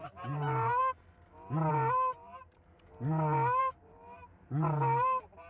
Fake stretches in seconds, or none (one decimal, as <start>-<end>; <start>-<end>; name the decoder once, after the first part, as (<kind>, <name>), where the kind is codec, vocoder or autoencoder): 0.0-0.8 (vocoder, BigVGAN v2); 1.7-2.3; 3.6-5.5